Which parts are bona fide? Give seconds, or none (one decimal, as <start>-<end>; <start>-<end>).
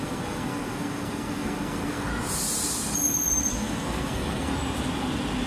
2.1-3.5; 4.5-5.5